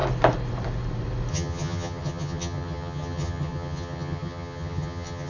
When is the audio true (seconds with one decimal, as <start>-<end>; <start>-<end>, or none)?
0.0-1.3